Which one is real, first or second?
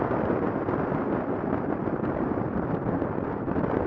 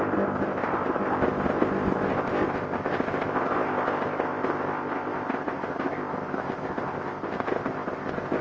first